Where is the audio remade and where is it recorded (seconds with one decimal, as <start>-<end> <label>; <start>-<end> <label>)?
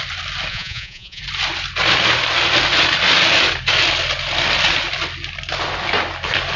0.0-0.5 recorded; 0.5-1.2 remade; 1.2-6.6 recorded